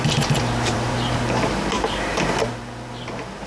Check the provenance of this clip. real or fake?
fake